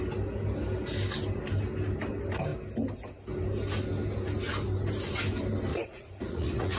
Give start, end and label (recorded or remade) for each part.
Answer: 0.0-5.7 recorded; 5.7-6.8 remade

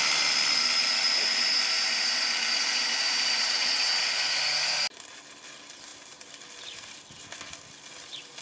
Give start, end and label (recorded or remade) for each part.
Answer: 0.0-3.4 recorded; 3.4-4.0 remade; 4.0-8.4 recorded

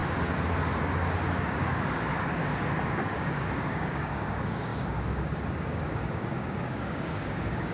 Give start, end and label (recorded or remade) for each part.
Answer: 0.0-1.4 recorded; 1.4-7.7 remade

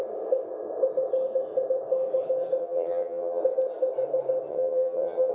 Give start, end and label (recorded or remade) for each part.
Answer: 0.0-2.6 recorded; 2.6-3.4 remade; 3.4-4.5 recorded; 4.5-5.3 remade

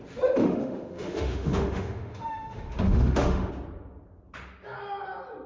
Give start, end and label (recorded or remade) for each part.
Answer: 0.0-0.4 recorded; 0.4-3.5 remade; 3.5-5.5 recorded

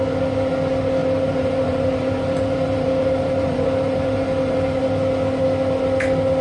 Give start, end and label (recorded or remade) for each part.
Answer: 0.0-1.0 recorded; 1.0-4.8 remade; 4.8-6.4 recorded